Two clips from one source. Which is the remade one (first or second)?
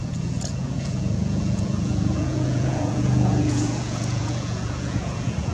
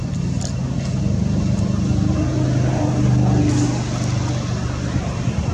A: first